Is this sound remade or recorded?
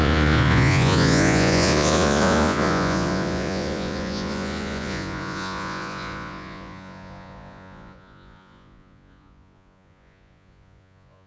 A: remade